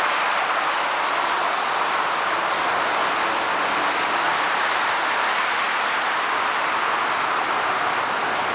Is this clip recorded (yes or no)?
yes